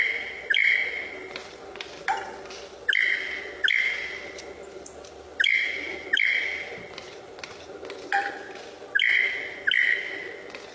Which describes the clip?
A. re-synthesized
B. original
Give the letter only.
B